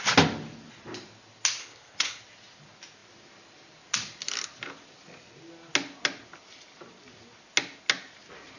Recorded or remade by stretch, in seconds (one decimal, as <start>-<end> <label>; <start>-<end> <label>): 0.0-1.6 recorded; 1.6-2.2 remade; 2.2-8.6 recorded